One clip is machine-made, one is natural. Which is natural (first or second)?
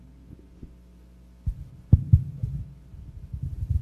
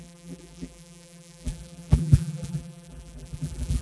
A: first